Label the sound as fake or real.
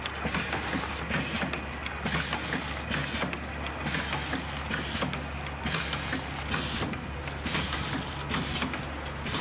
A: real